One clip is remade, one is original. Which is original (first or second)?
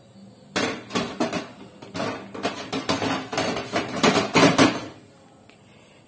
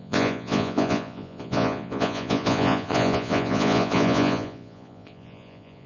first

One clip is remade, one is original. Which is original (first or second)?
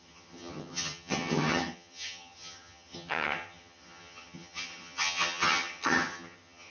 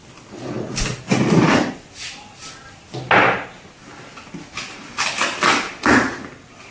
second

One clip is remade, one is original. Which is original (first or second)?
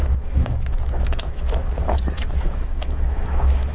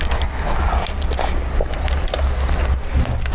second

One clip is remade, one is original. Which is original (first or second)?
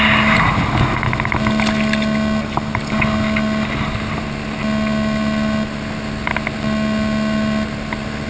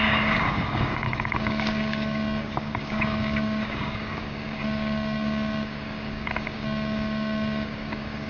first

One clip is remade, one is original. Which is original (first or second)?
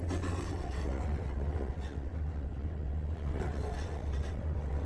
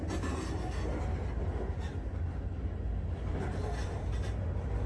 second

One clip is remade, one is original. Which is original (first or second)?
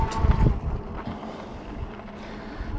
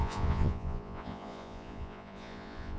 first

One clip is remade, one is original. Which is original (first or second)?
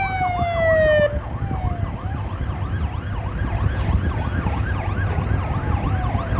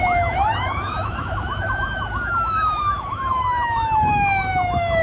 first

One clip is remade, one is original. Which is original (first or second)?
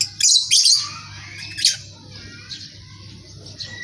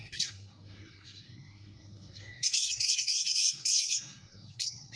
first